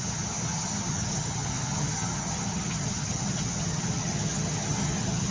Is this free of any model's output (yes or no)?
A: no